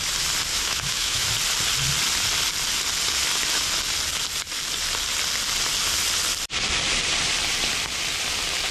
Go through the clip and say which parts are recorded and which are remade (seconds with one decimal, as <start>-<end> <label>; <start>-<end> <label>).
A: 0.0-0.5 recorded; 0.5-1.3 remade; 1.3-8.7 recorded